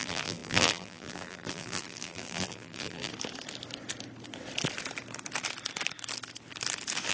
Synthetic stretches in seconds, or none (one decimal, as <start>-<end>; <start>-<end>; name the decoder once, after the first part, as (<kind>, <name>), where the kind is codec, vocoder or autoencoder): 0.0-3.1 (vocoder, BigVGAN v2)